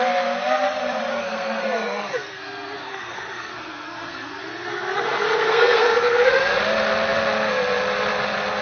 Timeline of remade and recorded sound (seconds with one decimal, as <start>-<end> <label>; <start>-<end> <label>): 0.0-1.1 recorded; 1.1-6.3 remade; 6.3-8.6 recorded